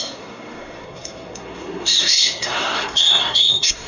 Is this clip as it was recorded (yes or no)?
no